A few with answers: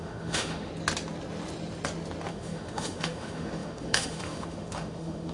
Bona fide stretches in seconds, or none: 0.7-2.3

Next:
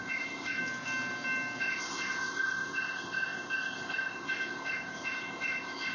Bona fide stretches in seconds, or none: 0.6-1.6

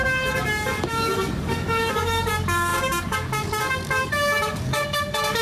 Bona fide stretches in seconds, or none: none

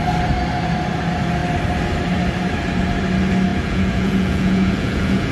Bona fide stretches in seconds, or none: 0.0-3.5

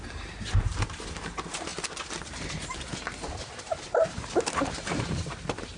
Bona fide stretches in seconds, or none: 1.7-3.6

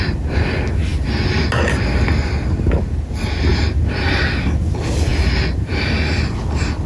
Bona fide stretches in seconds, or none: 0.0-6.9